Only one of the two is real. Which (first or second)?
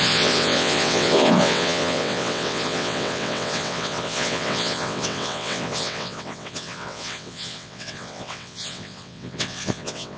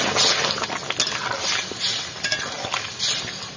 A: second